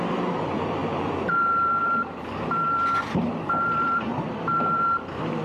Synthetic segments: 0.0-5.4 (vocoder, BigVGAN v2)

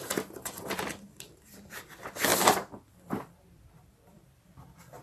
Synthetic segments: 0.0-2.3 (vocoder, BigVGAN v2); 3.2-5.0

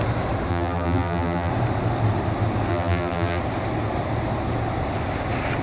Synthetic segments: 0.5-1.5 (vocoder, BigVGAN v2); 2.7-3.4

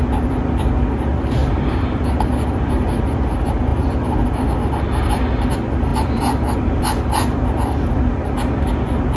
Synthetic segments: 1.4-2.7 (vocoder, BigVGAN v2); 3.7-4.5; 5.9-6.8

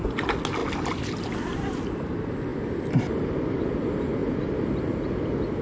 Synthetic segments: 0.6-1.3 (vocoder, BigVGAN v2); 4.2-4.8

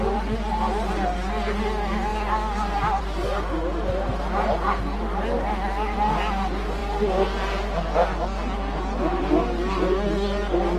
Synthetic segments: none

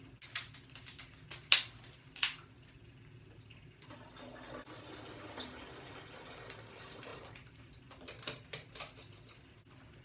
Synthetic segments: 7.1-7.8 (vocoder, BigVGAN v2)

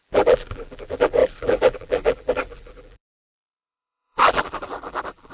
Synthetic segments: 0.0-5.3 (vocoder, BigVGAN v2)